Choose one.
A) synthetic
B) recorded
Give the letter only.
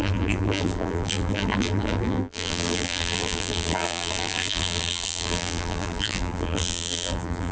A